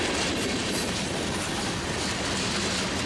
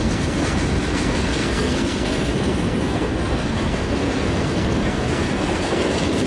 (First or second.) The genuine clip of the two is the first